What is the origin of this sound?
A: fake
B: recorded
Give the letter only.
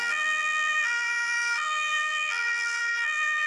A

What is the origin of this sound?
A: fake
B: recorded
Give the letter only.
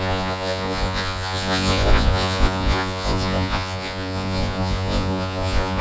A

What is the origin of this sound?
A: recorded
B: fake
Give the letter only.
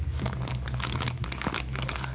B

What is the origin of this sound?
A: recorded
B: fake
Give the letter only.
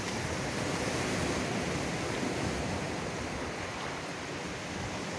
A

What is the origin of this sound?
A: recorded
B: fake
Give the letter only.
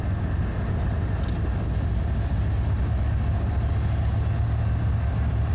A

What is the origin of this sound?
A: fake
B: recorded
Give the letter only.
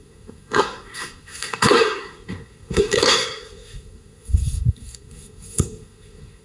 A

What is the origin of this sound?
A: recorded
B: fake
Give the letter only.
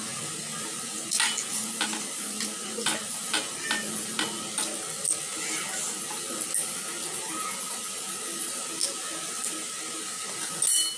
A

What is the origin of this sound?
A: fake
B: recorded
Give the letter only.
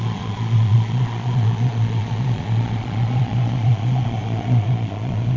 A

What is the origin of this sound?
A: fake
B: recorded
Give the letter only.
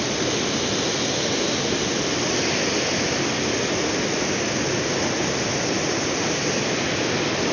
B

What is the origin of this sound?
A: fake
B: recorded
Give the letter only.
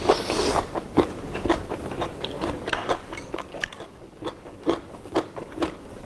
A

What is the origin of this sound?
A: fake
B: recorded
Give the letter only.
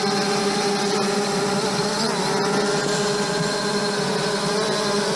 B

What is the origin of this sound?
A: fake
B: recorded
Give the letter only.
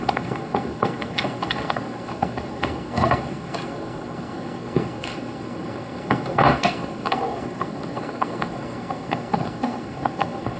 A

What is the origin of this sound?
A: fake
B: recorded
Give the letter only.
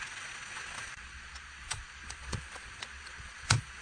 A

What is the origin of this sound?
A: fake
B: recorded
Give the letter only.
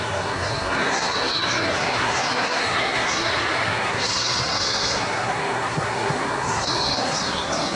A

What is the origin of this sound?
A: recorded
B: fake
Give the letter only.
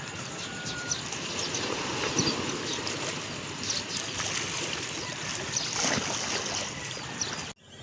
A